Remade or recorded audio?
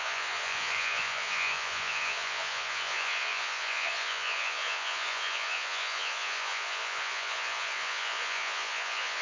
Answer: remade